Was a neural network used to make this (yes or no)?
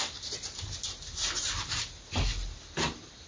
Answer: no